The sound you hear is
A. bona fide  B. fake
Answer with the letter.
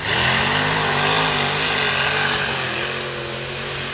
A